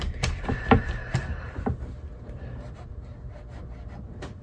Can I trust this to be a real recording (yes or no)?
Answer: no